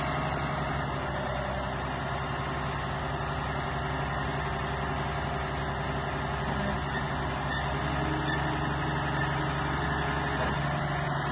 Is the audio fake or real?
real